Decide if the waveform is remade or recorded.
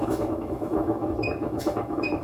remade